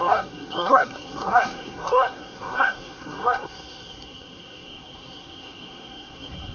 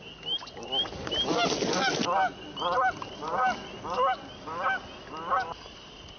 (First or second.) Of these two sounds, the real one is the second